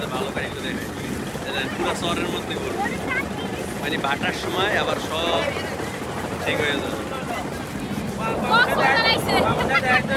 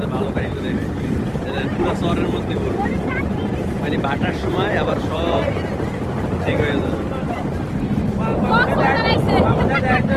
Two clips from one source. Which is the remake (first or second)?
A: second